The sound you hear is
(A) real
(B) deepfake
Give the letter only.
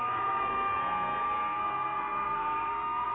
B